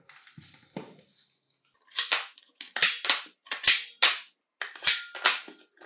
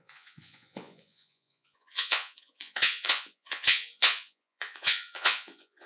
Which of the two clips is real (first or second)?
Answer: first